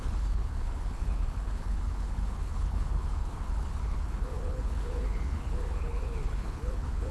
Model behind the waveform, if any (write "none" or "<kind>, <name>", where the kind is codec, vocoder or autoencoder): codec, HILCodec